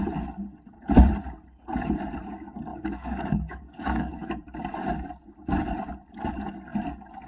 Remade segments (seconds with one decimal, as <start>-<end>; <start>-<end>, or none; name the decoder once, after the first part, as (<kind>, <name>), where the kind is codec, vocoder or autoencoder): 2.7-4.4 (codec, DAC)